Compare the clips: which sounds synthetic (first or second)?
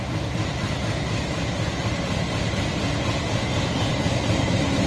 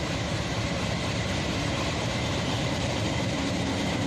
second